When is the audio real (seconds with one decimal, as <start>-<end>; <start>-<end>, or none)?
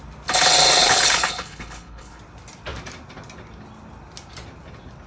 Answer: 0.0-0.8; 2.2-5.1